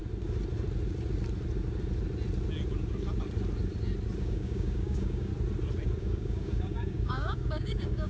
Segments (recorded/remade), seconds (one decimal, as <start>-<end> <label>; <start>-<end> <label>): 0.0-4.2 recorded; 4.2-5.3 remade; 5.3-6.0 recorded; 6.0-8.1 remade